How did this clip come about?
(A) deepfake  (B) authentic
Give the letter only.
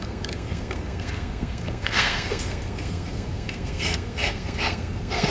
A